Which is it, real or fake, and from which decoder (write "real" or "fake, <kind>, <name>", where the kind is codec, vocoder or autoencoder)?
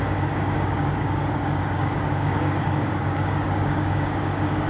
fake, codec, DAC